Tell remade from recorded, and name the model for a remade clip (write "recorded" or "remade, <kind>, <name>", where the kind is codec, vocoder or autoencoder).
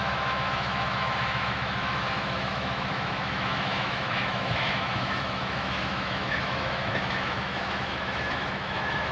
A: remade, autoencoder, DAC-VAE